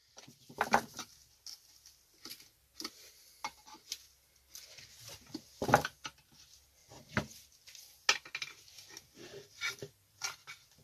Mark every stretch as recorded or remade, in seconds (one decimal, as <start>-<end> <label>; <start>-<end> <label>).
0.0-10.8 recorded